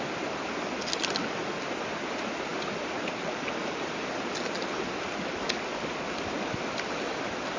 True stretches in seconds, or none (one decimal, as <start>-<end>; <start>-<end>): 0.0-7.6